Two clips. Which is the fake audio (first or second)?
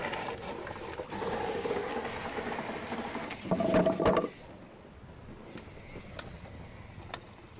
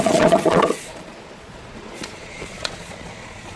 second